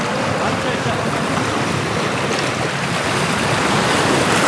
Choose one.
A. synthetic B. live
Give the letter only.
B